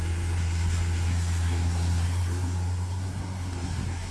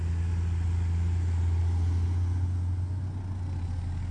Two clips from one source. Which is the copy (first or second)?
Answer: first